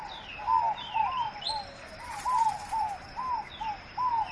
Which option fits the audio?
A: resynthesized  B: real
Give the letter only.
B